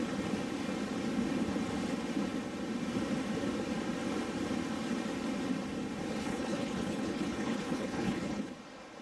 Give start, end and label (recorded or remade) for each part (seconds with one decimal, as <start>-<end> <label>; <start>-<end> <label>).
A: 0.0-6.2 recorded; 6.2-8.5 remade; 8.5-9.0 recorded

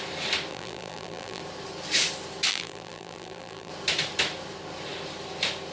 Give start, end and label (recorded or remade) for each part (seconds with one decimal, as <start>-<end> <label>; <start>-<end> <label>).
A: 0.0-0.5 recorded; 0.5-1.4 remade; 1.4-2.5 recorded; 2.5-3.7 remade; 3.7-5.7 recorded